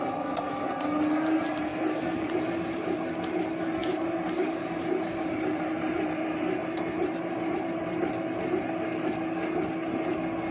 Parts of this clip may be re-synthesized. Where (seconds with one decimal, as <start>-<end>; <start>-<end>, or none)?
1.7-3.1; 3.8-8.1